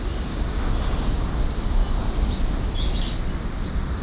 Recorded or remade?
recorded